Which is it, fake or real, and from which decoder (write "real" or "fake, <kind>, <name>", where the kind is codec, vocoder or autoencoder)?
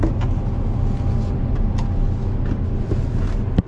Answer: real